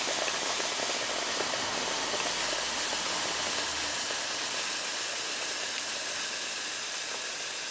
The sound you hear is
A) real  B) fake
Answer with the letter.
A